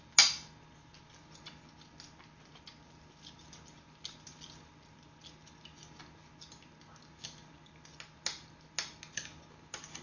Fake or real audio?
real